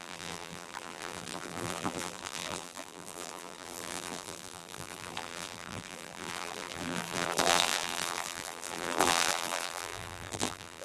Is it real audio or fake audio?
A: fake